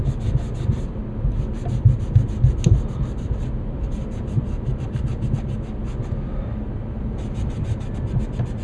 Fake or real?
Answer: real